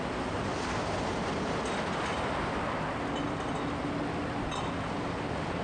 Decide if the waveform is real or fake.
real